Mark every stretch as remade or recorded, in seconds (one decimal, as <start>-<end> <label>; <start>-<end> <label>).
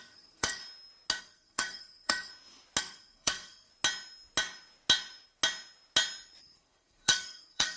0.0-0.6 remade; 0.6-1.2 recorded; 1.2-2.3 remade; 2.3-2.8 recorded; 2.8-3.7 remade; 3.7-6.4 recorded; 6.4-7.8 remade